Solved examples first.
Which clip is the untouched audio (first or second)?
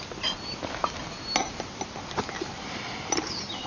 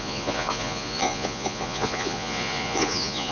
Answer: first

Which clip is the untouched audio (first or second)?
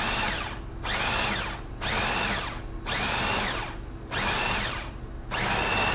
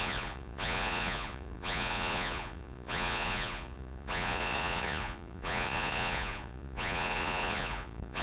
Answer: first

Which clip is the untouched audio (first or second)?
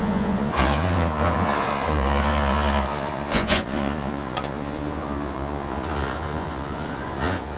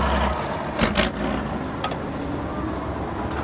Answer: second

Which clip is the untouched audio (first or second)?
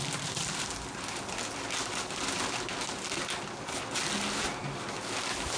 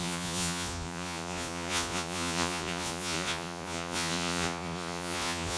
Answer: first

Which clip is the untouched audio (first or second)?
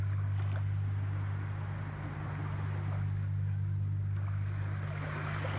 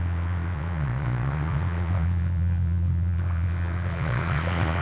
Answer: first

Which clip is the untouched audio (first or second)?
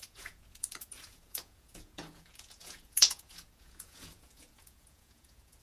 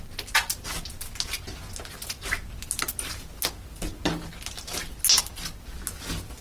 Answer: second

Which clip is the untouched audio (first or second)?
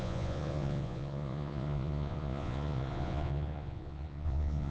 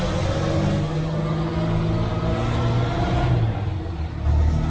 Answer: second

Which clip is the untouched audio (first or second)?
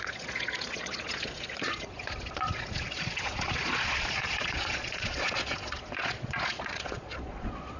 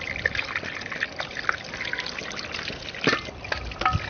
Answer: second